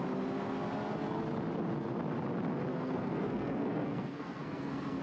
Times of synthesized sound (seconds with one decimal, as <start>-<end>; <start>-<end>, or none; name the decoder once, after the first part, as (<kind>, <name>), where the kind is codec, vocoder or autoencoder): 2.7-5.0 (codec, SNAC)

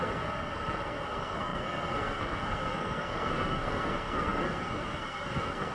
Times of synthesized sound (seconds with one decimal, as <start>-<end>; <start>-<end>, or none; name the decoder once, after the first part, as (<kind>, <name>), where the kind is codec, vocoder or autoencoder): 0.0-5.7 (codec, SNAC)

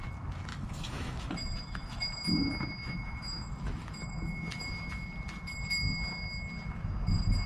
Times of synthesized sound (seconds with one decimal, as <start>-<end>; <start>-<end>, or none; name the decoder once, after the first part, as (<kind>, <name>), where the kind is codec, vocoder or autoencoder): 0.5-2.1 (autoencoder, DAC-VAE); 2.8-4.6

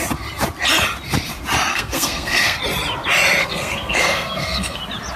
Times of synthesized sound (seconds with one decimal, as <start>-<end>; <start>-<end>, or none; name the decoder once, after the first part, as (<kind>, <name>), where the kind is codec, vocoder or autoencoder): 1.7-2.6 (codec, SNAC); 3.4-4.8

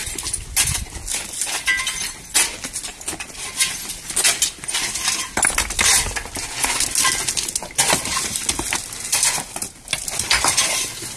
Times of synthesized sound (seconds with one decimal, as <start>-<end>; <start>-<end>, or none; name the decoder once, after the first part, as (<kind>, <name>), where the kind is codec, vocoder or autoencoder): none